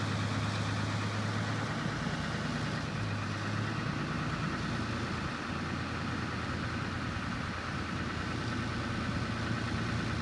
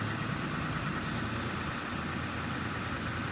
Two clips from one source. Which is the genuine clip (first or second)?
first